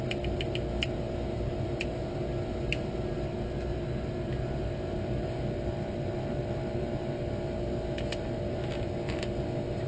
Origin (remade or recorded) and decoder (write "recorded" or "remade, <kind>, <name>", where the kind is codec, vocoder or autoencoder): recorded